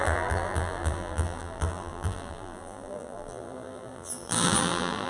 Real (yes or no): no